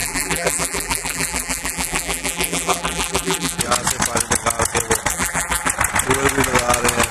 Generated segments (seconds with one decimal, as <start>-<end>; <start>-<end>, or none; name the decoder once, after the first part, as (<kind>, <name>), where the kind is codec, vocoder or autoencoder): 0.0-3.6 (vocoder, BigVGAN v2); 5.1-5.7